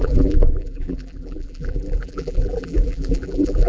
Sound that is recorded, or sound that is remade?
remade